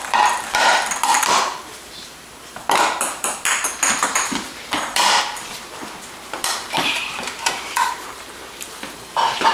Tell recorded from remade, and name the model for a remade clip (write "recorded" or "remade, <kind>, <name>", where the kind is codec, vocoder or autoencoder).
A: remade, vocoder, BigVGAN v2